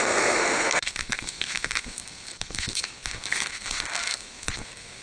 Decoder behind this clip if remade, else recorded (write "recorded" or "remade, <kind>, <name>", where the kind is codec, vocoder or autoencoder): remade, codec, SNAC